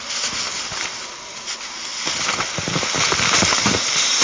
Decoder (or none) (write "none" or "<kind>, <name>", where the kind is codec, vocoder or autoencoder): none